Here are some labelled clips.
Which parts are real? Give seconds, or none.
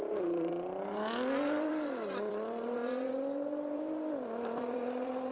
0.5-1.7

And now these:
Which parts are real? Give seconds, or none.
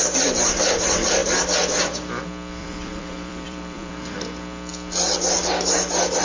0.0-2.6; 3.9-6.2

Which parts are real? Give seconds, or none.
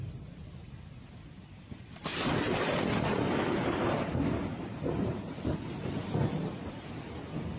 none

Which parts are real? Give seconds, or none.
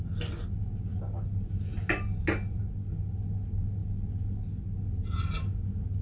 0.0-6.0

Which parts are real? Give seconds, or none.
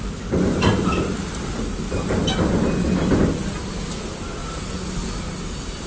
0.7-3.5; 4.4-5.9